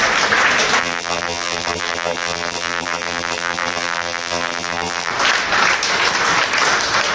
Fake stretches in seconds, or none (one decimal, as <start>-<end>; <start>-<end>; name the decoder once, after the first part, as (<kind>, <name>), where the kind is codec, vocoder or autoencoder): 0.8-5.1 (vocoder, BigVGAN v2)